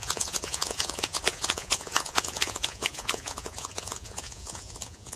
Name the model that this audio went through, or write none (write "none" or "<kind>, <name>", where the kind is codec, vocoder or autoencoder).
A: vocoder, Vocos